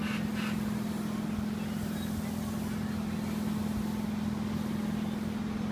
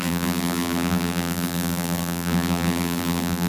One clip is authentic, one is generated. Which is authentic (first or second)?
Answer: first